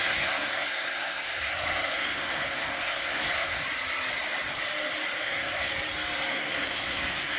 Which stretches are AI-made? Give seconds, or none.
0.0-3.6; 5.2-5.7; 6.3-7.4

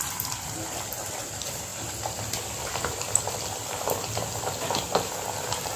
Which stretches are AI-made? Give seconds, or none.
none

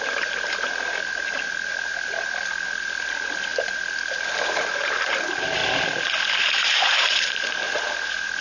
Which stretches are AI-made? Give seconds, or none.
0.0-5.6; 6.4-8.4

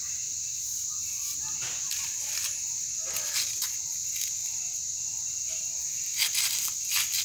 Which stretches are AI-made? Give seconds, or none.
none

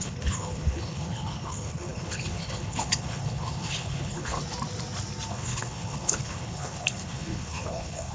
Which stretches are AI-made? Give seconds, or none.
0.0-4.4; 5.3-8.1

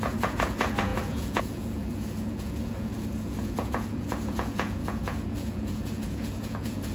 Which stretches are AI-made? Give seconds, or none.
0.0-6.9